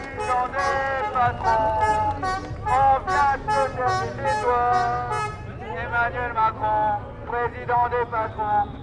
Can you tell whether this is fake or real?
real